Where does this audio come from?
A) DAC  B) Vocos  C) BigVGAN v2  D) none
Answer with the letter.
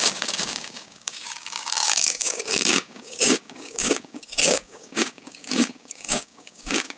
A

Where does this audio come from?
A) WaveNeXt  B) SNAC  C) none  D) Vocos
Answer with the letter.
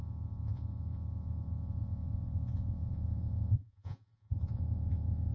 D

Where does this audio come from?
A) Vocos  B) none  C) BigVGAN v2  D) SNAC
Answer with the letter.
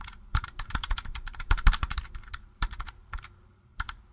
C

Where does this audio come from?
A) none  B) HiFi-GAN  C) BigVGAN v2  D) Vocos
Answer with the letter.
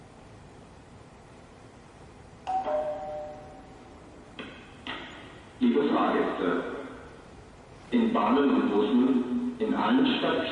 C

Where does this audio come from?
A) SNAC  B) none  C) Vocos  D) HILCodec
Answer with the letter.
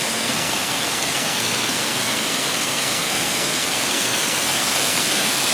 A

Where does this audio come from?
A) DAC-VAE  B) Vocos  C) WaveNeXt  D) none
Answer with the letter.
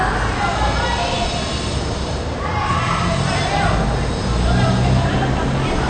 D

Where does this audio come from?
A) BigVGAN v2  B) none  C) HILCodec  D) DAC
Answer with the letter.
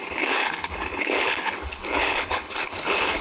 C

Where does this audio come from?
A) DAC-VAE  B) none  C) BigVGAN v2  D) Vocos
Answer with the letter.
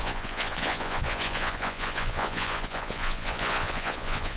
D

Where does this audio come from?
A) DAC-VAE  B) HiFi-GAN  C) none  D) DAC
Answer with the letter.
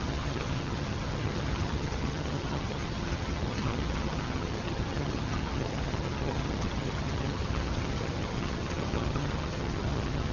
B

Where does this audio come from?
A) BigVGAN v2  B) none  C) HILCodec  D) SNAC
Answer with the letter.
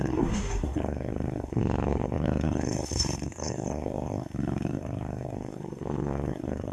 D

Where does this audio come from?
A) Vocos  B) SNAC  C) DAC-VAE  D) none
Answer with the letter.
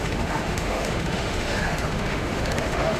C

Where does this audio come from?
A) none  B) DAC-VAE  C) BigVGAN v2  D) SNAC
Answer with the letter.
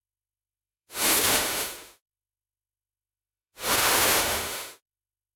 B